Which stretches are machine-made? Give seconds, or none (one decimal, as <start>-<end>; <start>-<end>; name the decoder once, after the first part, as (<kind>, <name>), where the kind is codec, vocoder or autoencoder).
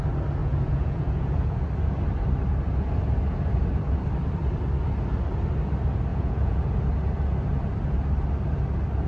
0.4-1.6 (vocoder, Vocos); 6.1-6.8